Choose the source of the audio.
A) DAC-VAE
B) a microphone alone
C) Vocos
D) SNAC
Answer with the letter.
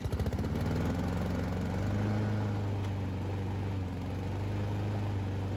B